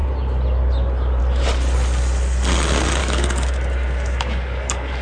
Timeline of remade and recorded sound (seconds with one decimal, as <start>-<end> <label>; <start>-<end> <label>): 0.0-3.0 recorded; 3.0-5.0 remade

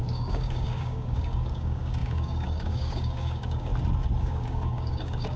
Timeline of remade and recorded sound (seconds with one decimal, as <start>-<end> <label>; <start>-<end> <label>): 0.0-3.7 remade; 3.7-4.2 recorded; 4.2-5.4 remade